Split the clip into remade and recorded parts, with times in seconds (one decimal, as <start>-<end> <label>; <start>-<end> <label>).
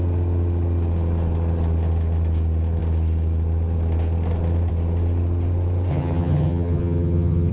0.0-5.9 recorded; 5.9-7.5 remade